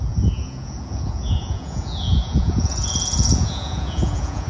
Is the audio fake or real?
fake